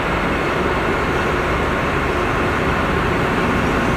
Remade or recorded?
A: recorded